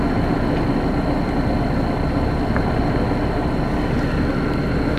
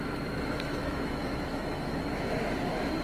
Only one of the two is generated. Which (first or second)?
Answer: second